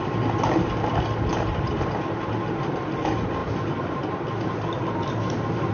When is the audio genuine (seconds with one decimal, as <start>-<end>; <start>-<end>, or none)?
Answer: 0.0-1.3; 1.9-3.4; 4.1-5.7